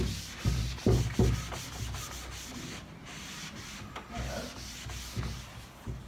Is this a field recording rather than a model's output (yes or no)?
yes